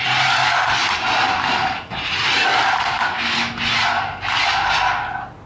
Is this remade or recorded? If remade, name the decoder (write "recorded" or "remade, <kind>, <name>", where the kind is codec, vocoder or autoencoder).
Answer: recorded